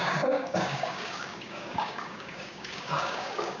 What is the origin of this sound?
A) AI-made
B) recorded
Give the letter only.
A